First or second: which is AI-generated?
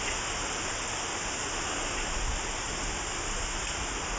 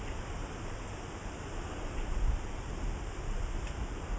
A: second